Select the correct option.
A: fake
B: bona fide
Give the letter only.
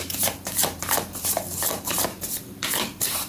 A